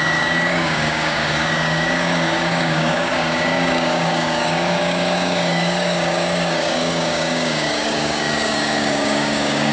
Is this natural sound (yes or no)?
no